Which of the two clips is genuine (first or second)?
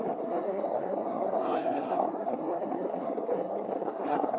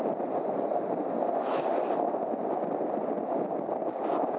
second